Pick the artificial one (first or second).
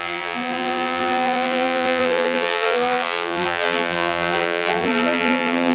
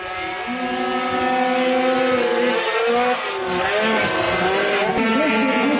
first